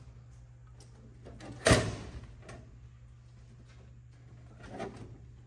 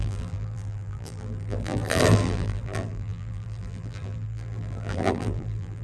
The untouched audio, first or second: first